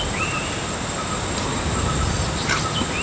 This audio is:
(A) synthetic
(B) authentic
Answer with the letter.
B